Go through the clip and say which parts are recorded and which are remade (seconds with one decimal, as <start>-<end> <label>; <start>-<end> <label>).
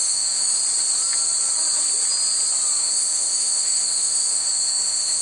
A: 0.0-0.6 remade; 0.6-2.8 recorded; 2.8-5.2 remade